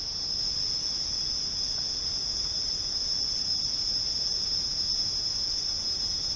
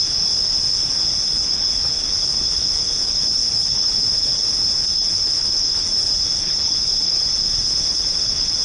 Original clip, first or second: first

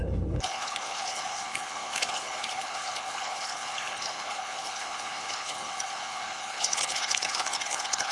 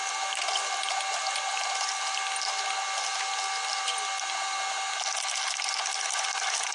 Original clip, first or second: second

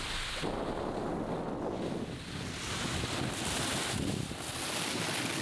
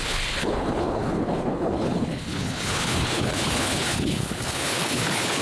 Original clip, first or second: first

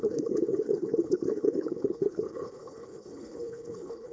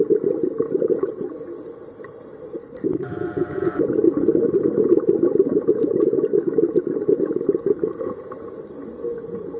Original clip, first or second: second